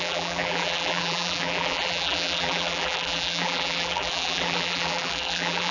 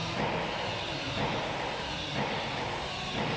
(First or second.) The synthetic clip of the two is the first